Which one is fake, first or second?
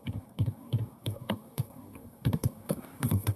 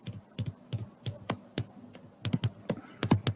first